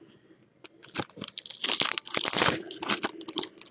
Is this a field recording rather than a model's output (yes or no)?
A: yes